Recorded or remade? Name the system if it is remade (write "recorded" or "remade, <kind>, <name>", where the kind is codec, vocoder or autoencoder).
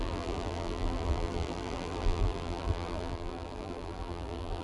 remade, vocoder, BigVGAN v2